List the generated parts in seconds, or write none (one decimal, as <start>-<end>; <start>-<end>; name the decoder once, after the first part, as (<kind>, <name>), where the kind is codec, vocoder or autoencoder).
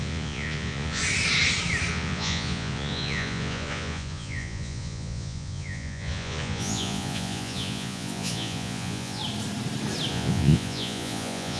0.0-1.0 (vocoder, Vocos); 1.9-9.2; 10.1-11.6